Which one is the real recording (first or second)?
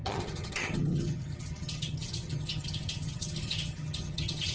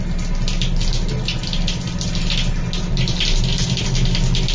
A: second